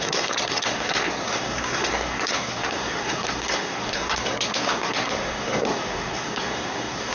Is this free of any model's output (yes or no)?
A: no